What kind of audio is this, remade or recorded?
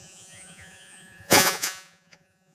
remade